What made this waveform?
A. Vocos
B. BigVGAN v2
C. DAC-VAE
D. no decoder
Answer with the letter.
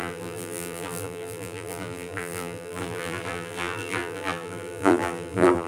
B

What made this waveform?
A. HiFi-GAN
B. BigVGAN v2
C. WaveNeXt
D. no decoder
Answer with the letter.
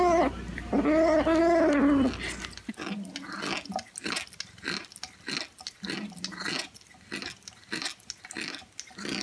D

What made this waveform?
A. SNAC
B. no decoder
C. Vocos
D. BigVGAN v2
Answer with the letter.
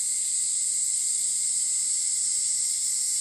D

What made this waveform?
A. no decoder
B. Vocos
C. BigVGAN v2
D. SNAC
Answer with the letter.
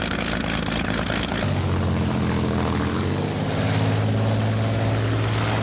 A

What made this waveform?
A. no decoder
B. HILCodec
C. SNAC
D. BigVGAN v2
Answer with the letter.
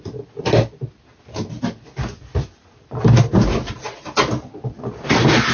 A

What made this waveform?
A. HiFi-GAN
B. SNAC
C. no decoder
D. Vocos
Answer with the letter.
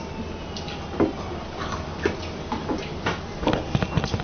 C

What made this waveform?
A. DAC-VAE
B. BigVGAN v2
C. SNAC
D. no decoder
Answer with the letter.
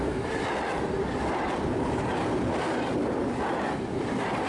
D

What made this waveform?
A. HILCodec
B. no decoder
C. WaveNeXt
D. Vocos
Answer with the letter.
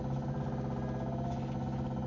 B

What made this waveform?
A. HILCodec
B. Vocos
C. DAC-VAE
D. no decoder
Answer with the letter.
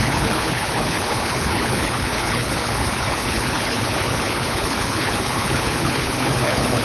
A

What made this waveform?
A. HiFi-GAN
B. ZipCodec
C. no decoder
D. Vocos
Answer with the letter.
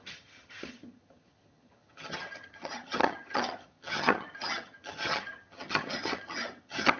A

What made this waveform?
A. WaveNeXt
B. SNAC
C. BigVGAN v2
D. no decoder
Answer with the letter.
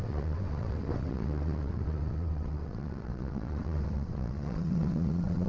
A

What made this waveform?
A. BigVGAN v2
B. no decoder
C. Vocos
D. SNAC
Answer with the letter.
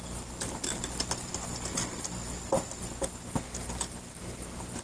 B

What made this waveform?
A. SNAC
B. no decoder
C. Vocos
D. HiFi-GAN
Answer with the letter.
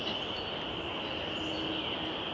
B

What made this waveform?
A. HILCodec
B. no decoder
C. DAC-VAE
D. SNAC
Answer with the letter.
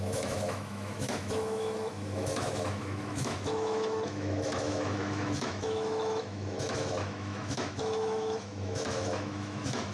C